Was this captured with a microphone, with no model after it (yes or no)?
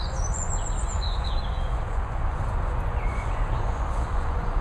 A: no